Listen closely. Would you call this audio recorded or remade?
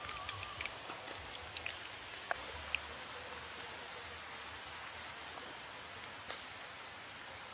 recorded